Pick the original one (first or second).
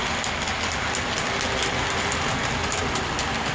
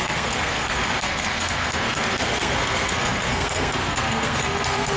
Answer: first